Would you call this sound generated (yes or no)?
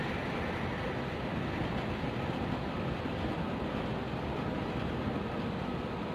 no